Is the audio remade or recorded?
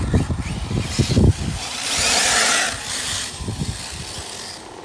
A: recorded